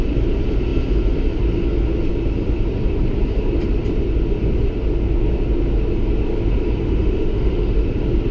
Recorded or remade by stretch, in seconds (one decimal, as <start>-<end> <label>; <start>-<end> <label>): 0.0-6.8 recorded; 6.8-7.8 remade; 7.8-8.3 recorded